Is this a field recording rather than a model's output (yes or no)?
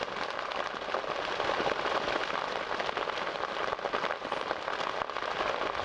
yes